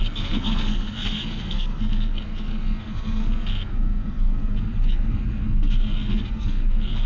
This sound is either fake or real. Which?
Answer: fake